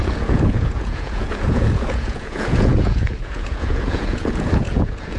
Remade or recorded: remade